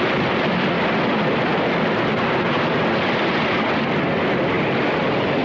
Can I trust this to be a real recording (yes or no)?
yes